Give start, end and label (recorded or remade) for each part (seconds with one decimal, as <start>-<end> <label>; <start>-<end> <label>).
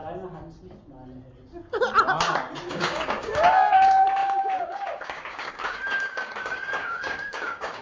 0.0-2.7 recorded; 2.7-7.8 remade